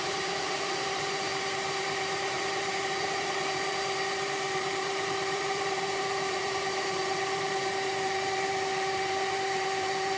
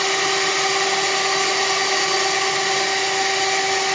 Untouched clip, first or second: second